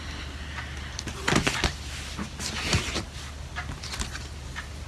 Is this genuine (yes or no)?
yes